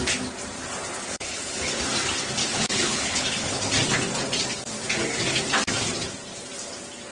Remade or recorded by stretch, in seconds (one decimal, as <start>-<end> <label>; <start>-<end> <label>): 0.0-1.1 recorded; 1.1-1.8 remade; 1.8-2.4 recorded; 2.4-3.6 remade; 3.6-7.1 recorded